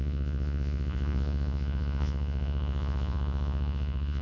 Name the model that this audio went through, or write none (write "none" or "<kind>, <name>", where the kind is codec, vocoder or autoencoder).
vocoder, Vocos